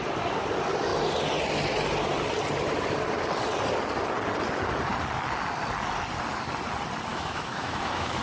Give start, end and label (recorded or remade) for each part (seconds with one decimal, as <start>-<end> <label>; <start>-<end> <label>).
0.0-7.1 recorded; 7.1-8.2 remade